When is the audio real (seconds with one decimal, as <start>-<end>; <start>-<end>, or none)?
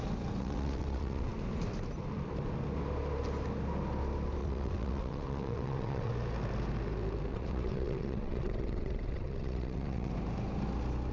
0.0-0.4; 1.3-4.4; 6.1-7.3; 10.1-11.1